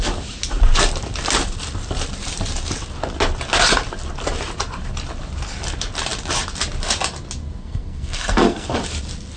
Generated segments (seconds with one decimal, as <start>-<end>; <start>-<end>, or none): 7.6-8.8